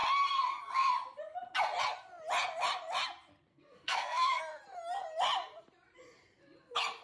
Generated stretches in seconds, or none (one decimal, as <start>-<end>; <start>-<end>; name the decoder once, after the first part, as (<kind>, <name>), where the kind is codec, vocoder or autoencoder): 3.5-4.4 (codec, SNAC)